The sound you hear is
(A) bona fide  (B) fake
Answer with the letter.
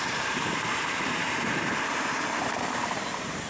B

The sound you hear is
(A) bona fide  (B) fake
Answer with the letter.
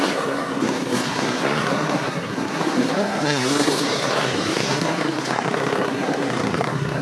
B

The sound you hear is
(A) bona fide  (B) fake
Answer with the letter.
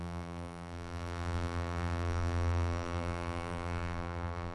B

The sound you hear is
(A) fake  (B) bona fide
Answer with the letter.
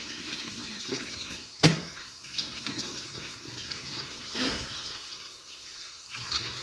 A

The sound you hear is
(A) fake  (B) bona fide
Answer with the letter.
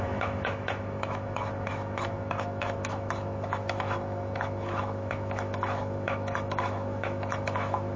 A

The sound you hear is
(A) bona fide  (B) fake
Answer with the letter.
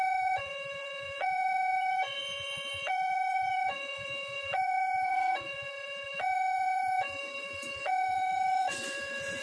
B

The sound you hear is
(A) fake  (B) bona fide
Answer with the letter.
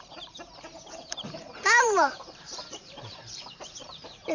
A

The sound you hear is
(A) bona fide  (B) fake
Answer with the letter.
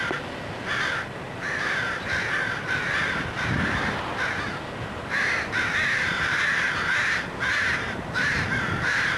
B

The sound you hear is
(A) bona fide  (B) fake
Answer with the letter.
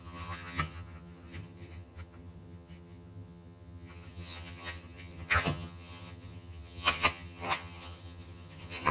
B